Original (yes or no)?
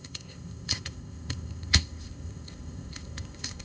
no